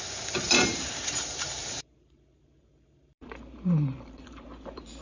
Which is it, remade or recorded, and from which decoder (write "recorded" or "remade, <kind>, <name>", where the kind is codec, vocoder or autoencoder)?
remade, vocoder, BigVGAN v2